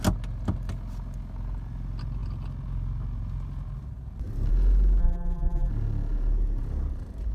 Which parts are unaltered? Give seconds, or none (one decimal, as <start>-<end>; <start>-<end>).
0.0-5.0; 5.7-7.3